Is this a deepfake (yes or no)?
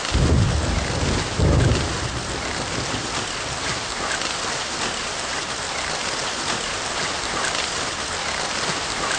no